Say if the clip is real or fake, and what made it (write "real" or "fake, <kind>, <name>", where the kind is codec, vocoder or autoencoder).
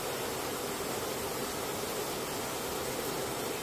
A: real